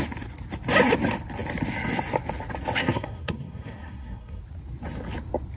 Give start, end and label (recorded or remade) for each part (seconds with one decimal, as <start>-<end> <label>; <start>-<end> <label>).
0.0-2.8 recorded; 2.8-4.4 remade; 4.4-5.6 recorded